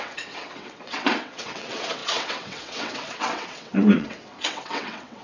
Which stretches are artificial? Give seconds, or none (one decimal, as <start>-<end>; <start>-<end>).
0.0-5.2